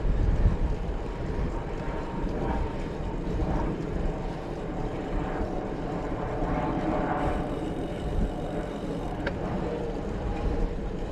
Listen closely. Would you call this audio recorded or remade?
remade